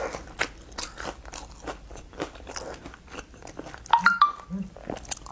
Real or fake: real